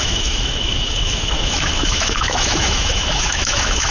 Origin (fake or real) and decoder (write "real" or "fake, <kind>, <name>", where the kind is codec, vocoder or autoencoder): fake, autoencoder, DAC-VAE